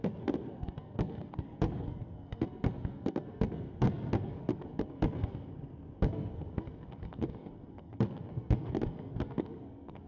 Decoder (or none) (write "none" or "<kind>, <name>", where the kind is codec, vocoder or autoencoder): codec, SNAC